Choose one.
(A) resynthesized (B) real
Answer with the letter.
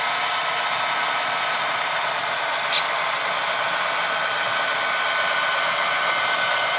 A